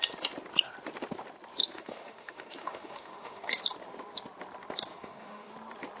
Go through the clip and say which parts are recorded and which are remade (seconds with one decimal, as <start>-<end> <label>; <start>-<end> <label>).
0.0-1.7 recorded; 1.7-3.6 remade; 3.6-4.9 recorded; 4.9-5.5 remade; 5.5-6.0 recorded